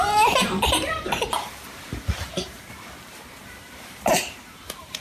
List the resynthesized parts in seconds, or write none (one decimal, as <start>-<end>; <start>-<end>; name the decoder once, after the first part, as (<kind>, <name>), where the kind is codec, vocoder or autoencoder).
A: 0.0-5.0 (vocoder, BigVGAN v2)